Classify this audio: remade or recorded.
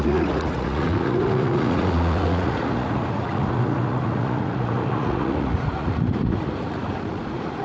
remade